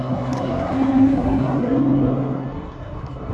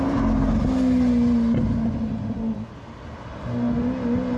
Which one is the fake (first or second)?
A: first